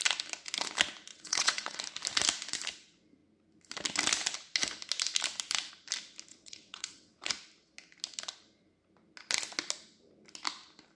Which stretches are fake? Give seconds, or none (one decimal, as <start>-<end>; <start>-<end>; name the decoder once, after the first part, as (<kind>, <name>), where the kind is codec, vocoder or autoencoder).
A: 1.1-1.8 (vocoder, WaveNeXt); 6.3-7.3